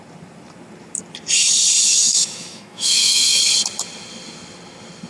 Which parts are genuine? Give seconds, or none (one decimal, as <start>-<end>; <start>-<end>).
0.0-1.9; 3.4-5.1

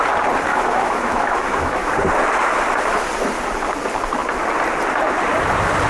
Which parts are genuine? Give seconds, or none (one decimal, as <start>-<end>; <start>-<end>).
0.0-0.5; 1.9-5.9

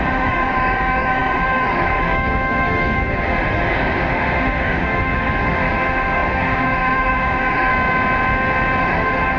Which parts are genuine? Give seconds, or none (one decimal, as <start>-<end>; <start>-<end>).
7.7-8.8